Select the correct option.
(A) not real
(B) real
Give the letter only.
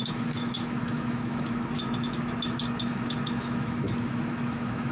A